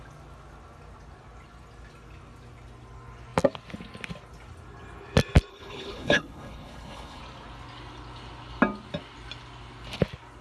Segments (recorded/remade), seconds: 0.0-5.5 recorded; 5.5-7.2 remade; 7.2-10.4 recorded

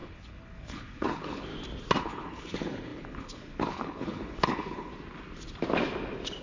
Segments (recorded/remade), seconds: 0.0-1.5 remade; 1.5-2.0 recorded; 2.0-4.9 remade; 4.9-6.4 recorded

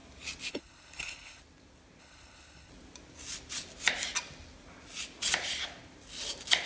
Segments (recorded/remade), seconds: 0.0-0.5 recorded; 0.5-1.4 remade; 1.4-2.0 recorded; 2.0-2.7 remade; 2.7-6.7 recorded

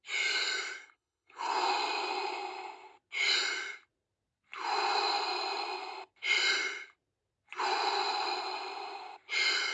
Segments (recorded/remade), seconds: 0.0-0.8 recorded; 0.8-1.5 remade; 1.5-9.7 recorded

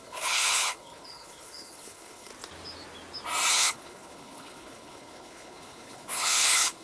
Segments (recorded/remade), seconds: 0.0-2.3 remade; 2.3-3.5 recorded; 3.5-6.8 remade